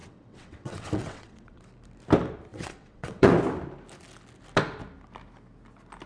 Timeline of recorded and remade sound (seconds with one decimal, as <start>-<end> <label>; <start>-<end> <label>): 0.0-1.6 remade; 1.6-2.5 recorded; 2.5-3.3 remade; 3.3-6.1 recorded